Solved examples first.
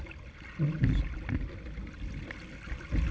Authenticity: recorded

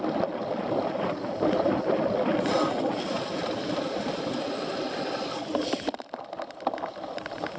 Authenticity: recorded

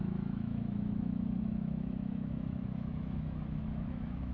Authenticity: remade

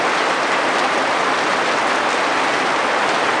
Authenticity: recorded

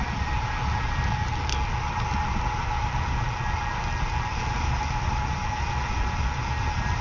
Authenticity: recorded